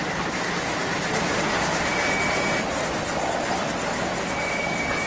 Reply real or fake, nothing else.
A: real